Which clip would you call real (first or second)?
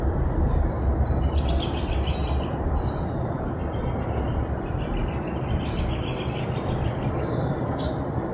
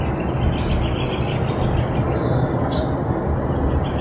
second